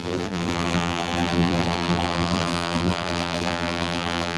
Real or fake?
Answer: fake